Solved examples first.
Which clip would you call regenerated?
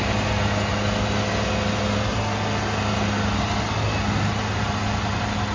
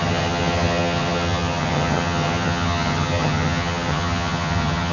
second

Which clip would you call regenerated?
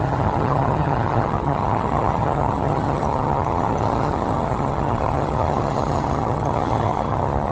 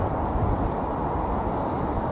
first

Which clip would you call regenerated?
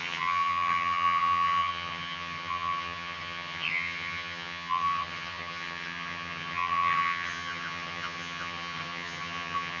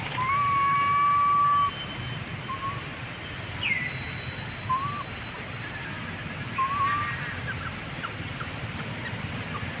first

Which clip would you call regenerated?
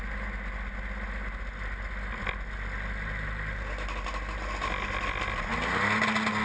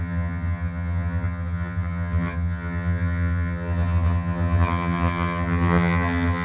second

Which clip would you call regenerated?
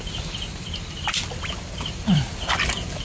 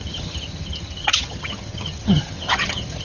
second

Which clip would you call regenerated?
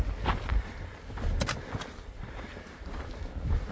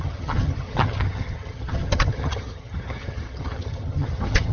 second